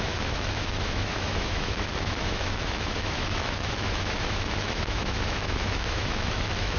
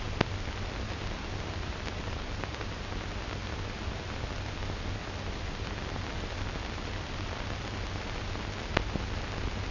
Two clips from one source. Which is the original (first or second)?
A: second